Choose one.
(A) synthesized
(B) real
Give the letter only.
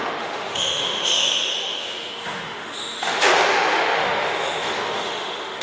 A